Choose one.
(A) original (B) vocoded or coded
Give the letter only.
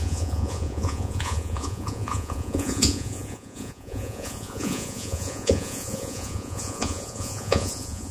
B